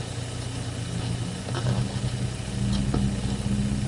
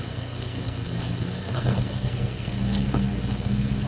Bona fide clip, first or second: first